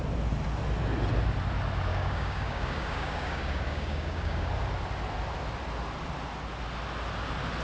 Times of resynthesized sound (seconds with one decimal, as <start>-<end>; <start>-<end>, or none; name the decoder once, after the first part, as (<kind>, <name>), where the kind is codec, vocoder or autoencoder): 1.9-4.5 (codec, DAC)